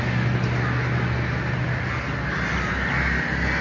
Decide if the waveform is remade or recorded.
recorded